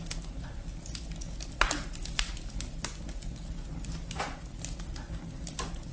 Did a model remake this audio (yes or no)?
no